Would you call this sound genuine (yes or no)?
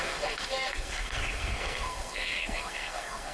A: no